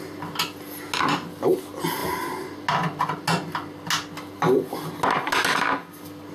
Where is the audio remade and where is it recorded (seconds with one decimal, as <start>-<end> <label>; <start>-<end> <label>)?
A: 0.0-6.3 recorded